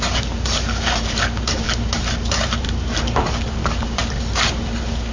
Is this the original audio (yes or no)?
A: no